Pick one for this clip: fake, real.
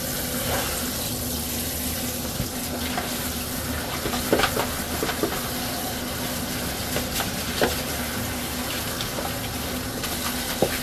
real